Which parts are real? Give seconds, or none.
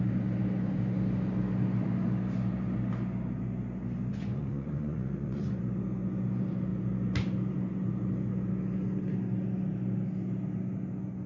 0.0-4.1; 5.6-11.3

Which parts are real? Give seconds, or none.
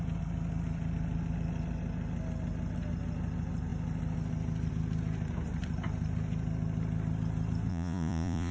0.0-7.7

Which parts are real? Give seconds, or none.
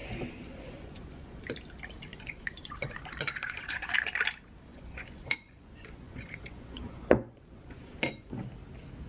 1.4-2.1; 3.9-4.7; 8.4-9.1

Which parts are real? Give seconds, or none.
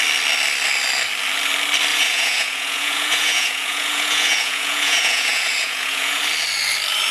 0.0-1.9; 6.2-7.1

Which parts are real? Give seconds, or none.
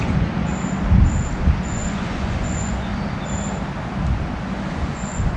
0.5-1.6; 2.9-4.7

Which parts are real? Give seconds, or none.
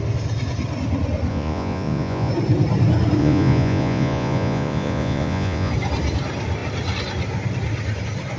0.0-1.3; 2.3-3.2; 5.7-8.4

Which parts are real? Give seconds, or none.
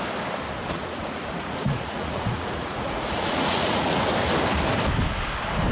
0.0-0.6; 4.0-5.7